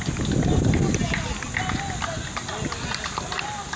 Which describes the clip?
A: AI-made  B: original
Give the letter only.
B